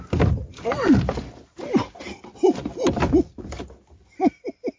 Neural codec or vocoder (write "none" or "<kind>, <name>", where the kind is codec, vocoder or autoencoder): none